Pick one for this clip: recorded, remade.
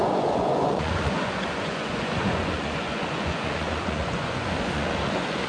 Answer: remade